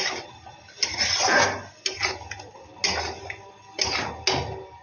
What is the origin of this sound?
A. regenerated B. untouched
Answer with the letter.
B